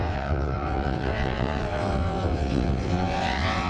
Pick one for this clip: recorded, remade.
remade